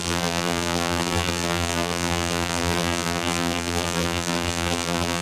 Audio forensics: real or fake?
fake